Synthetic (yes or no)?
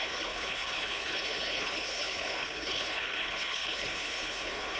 yes